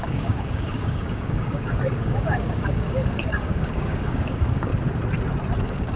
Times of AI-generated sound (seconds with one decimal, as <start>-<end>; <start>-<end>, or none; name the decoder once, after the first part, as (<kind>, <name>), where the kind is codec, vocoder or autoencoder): 0.0-4.7 (codec, DAC); 5.6-6.0